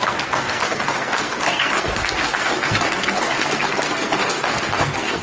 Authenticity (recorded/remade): remade